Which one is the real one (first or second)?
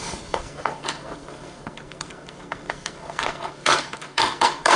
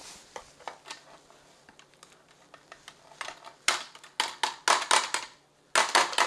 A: second